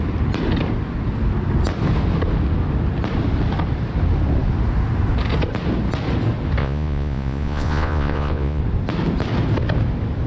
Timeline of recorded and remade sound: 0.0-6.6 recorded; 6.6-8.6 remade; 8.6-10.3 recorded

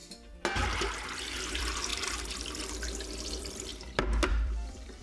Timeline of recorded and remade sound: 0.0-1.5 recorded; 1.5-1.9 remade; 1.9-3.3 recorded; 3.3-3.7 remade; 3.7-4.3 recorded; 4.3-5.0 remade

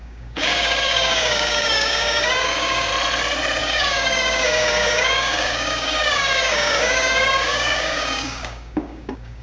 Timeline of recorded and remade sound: 0.0-2.9 remade; 2.9-3.6 recorded; 3.6-9.4 remade

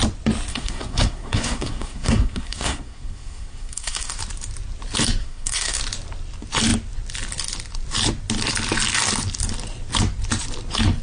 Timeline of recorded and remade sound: 0.0-0.5 recorded; 0.5-4.2 remade; 4.2-5.2 recorded; 5.2-5.8 remade; 5.8-11.0 recorded